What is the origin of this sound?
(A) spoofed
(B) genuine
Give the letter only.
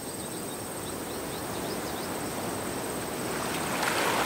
B